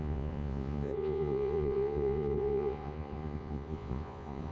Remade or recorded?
remade